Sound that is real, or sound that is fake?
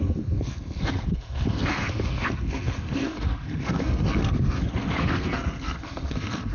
fake